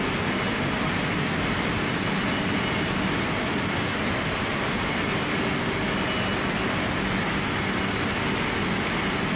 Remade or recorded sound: recorded